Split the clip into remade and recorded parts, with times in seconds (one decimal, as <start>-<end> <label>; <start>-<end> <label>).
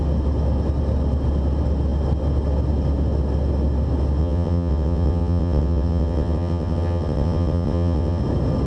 0.0-4.2 recorded; 4.2-8.2 remade; 8.2-8.7 recorded